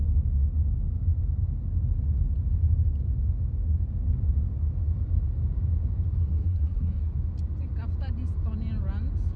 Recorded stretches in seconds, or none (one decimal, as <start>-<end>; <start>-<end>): 0.0-6.2; 7.0-9.4